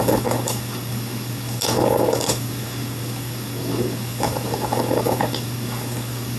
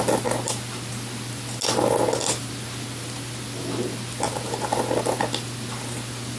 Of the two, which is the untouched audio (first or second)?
second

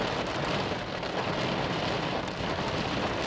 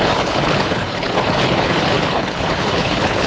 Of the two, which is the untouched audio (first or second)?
first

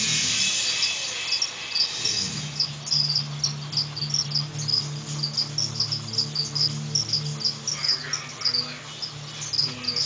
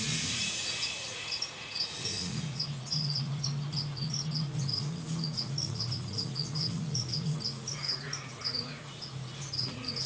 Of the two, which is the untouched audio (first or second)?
first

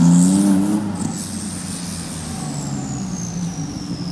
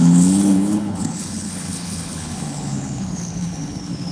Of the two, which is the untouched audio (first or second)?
first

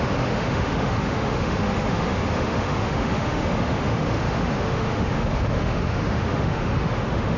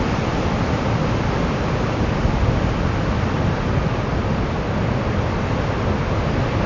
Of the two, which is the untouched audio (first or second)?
second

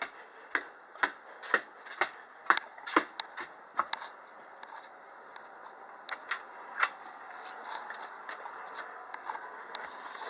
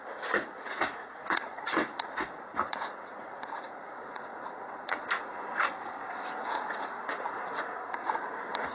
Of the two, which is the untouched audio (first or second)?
first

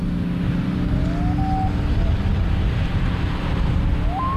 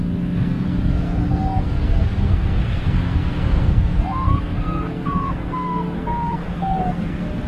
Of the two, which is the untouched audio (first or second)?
first